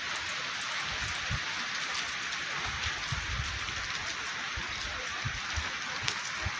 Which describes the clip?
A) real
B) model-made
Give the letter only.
A